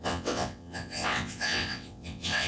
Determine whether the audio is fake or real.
fake